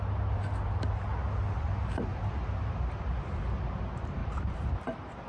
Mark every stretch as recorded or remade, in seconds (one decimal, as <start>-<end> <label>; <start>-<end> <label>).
0.0-4.2 recorded; 4.2-4.7 remade; 4.7-5.3 recorded